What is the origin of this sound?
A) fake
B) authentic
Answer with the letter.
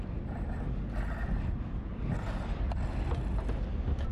B